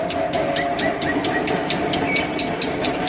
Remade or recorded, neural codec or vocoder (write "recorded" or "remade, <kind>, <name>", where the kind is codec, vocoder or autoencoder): recorded